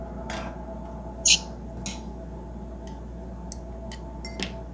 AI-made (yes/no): no